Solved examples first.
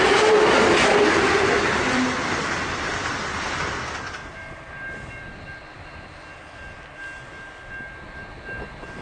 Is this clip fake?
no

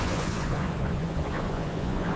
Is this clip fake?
yes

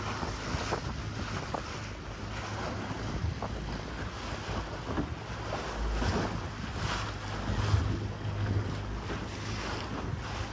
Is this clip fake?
no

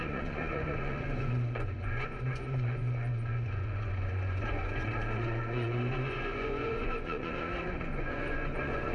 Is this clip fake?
yes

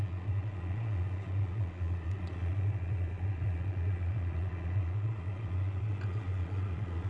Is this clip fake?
yes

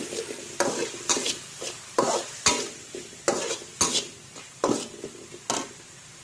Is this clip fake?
no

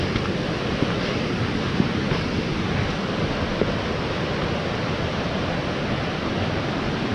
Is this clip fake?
no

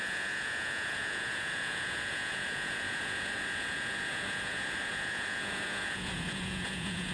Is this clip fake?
yes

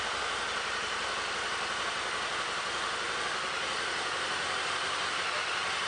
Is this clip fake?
no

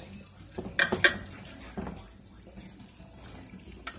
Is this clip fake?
no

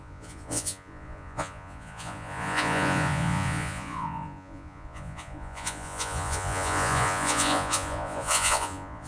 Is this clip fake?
yes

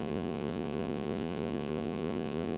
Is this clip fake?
yes